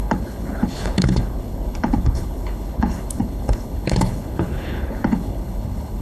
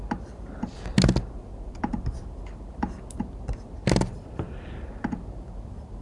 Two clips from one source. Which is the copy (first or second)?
first